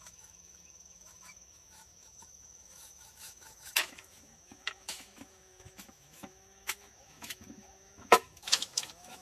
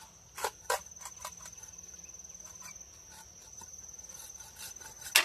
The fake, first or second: first